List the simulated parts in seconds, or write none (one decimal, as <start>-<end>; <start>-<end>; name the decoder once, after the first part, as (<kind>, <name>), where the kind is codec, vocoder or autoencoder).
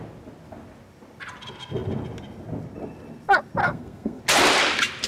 3.6-4.2 (codec, SNAC)